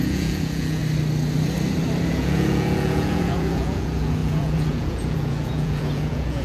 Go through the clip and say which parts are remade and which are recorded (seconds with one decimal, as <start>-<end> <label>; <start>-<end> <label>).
0.0-0.8 remade; 0.8-2.1 recorded; 2.1-6.4 remade

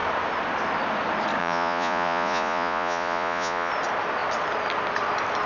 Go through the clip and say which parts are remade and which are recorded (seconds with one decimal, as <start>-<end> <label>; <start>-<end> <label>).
0.0-1.4 recorded; 1.4-3.7 remade; 3.7-5.5 recorded

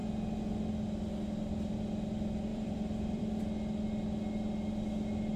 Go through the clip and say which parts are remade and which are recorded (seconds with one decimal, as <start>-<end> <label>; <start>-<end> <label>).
0.0-2.5 recorded; 2.5-3.4 remade; 3.4-5.4 recorded

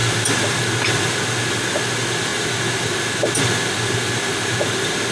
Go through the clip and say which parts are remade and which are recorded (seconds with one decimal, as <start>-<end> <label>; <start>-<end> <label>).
0.0-0.6 remade; 0.6-5.1 recorded

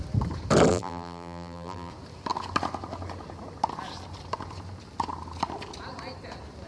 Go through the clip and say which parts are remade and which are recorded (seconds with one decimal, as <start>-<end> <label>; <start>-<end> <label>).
0.0-0.7 recorded; 0.7-1.9 remade; 1.9-6.7 recorded

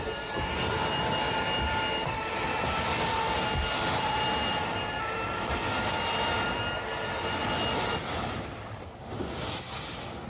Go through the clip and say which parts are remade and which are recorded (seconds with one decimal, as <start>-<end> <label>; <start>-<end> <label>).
0.0-10.3 recorded